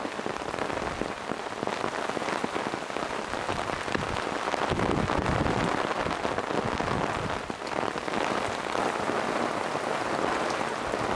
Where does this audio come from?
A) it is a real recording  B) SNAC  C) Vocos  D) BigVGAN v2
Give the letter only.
A